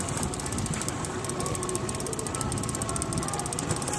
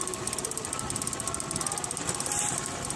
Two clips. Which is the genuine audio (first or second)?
first